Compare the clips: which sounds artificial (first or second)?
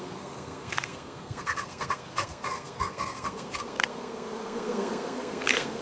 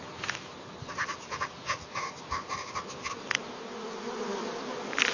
first